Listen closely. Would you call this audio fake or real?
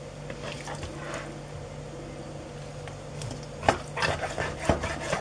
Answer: real